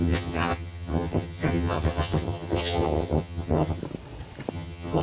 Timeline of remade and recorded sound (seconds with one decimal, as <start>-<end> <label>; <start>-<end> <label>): 0.0-3.8 remade; 3.8-4.5 recorded; 4.5-5.0 remade